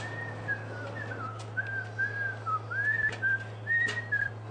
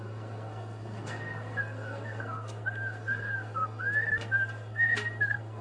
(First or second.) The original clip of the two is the first